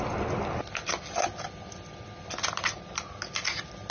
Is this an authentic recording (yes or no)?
yes